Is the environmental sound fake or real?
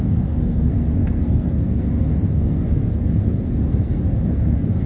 fake